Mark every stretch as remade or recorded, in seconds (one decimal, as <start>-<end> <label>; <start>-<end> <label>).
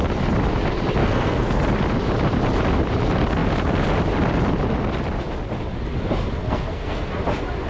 0.0-1.0 recorded; 1.0-1.6 remade; 1.6-6.4 recorded; 6.4-7.1 remade; 7.1-7.7 recorded